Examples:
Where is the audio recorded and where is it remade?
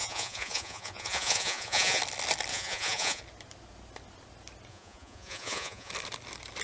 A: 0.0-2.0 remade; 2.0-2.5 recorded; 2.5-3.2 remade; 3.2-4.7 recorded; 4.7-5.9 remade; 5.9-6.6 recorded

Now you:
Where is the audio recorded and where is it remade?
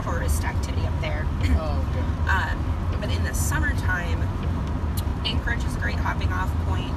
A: 0.0-0.7 remade; 0.7-5.1 recorded; 5.1-5.8 remade; 5.8-7.0 recorded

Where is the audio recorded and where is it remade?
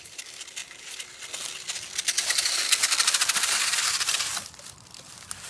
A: 0.0-0.6 remade; 0.6-3.9 recorded; 3.9-4.3 remade; 4.3-5.1 recorded; 5.1-5.5 remade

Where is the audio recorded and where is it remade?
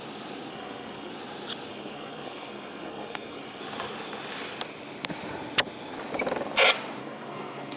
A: 0.0-0.5 recorded; 0.5-1.1 remade; 1.1-1.7 recorded; 1.7-3.6 remade; 3.6-7.0 recorded; 7.0-7.8 remade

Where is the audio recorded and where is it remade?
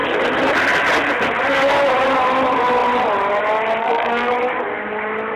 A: 0.0-3.8 recorded; 3.8-4.3 remade; 4.3-5.4 recorded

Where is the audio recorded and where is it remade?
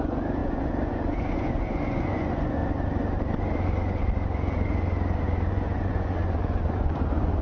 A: 0.0-2.6 remade; 2.6-5.5 recorded; 5.5-7.4 remade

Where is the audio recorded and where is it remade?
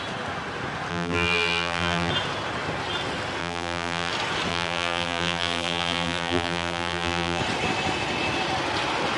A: 0.0-0.9 recorded; 0.9-2.1 remade; 2.1-3.4 recorded; 3.4-4.1 remade; 4.1-4.5 recorded; 4.5-7.4 remade; 7.4-9.2 recorded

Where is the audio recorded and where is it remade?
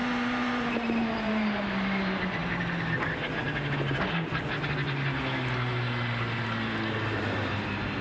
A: 0.0-2.4 remade; 2.4-7.2 recorded; 7.2-8.0 remade